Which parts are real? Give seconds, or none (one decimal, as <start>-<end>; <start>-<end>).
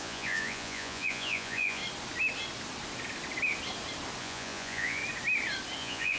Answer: 1.8-4.2; 5.0-5.8